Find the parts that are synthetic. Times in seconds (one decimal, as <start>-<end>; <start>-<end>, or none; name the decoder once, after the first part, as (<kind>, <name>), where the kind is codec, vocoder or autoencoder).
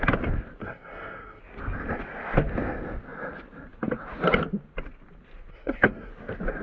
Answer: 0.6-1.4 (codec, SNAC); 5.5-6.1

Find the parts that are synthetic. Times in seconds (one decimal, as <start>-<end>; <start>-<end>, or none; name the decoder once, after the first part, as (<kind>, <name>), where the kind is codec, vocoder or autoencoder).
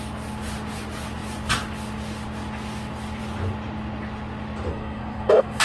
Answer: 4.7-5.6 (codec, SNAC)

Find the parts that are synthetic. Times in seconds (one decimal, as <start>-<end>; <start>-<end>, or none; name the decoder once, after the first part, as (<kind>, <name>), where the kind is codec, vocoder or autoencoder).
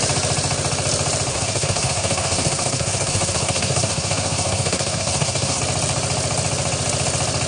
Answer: 1.3-5.6 (codec, SNAC)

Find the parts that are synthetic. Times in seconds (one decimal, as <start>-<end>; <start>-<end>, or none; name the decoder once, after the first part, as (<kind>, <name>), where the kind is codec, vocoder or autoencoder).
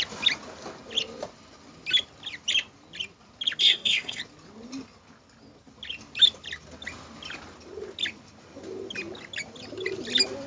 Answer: 3.6-4.2 (codec, SNAC)